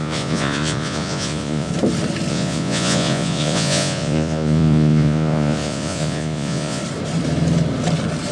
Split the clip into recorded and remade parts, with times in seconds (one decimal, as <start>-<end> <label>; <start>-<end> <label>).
0.0-1.7 remade; 1.7-2.3 recorded; 2.3-6.8 remade; 6.8-8.3 recorded